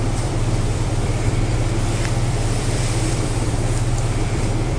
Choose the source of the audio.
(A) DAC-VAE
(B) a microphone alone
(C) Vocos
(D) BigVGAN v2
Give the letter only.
D